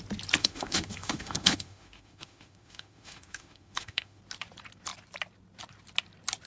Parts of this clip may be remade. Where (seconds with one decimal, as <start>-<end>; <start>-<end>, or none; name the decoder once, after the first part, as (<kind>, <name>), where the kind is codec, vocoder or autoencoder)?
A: 0.4-4.2 (autoencoder, DAC-VAE)